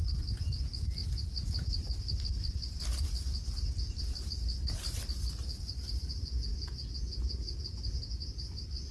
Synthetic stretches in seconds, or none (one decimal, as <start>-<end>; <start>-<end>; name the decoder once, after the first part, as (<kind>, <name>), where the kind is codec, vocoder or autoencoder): none

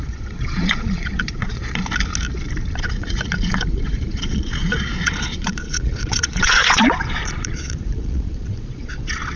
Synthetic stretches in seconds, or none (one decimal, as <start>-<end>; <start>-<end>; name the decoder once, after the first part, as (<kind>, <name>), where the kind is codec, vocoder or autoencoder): 0.0-1.8 (vocoder, Vocos); 2.8-9.4

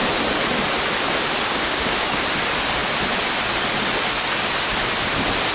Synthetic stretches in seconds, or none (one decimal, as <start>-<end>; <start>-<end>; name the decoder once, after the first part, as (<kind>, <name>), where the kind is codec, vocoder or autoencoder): 1.5-2.2 (codec, DAC)

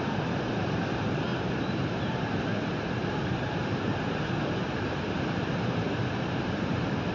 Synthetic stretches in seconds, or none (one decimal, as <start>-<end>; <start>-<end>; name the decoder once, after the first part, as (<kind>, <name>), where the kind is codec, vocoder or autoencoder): 0.0-7.1 (vocoder, BigVGAN v2)